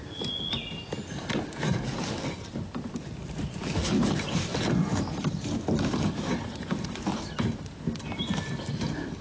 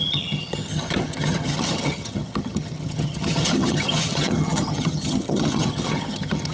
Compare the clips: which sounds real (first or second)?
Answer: first